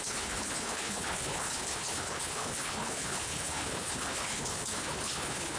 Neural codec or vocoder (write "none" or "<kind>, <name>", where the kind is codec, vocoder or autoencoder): codec, HILCodec